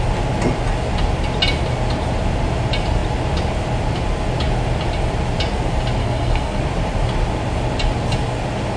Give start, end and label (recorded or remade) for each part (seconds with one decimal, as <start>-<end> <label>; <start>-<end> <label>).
0.0-6.0 recorded; 6.0-6.6 remade; 6.6-8.8 recorded